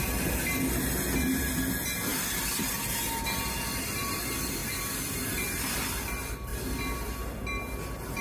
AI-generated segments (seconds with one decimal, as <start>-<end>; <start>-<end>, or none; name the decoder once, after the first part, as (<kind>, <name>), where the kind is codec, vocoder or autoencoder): none